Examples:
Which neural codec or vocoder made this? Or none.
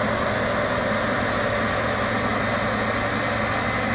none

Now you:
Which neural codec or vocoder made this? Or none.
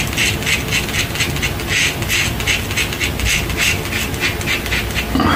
none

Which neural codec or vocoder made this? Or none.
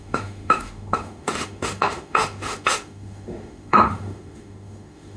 autoencoder, DAC-VAE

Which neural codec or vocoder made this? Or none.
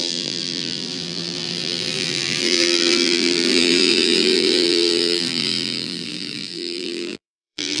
vocoder, BigVGAN v2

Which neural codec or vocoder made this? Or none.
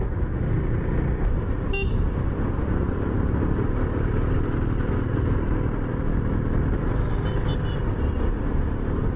none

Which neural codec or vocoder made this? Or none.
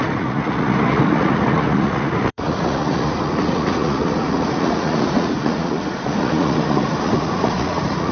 vocoder, Vocos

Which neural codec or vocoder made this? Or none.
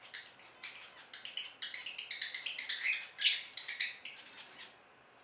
none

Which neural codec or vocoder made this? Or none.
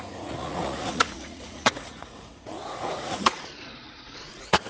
vocoder, Vocos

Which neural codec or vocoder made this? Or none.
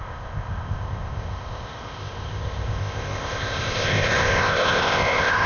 codec, ZipCodec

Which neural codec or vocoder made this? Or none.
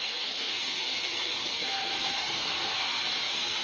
codec, SNAC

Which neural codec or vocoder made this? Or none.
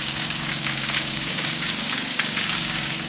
codec, DAC